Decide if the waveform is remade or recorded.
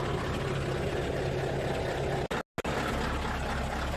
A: recorded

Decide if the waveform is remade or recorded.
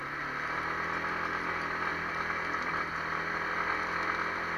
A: recorded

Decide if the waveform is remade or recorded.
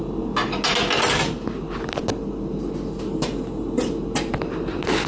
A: recorded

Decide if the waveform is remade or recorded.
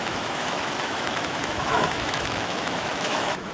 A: remade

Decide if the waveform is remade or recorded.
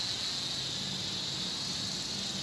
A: recorded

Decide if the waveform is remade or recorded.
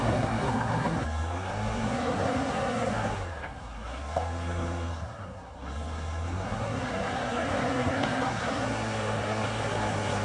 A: remade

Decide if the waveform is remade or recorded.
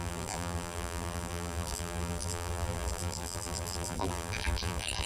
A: remade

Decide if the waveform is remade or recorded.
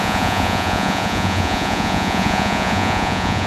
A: remade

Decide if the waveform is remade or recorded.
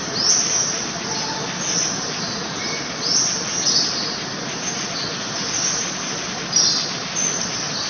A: recorded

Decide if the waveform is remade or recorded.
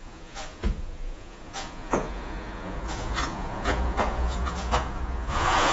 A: remade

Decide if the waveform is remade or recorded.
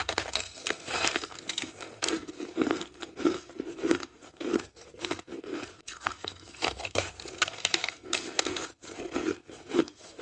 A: remade